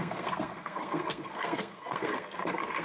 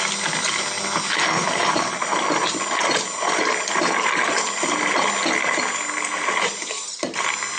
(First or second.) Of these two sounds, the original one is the second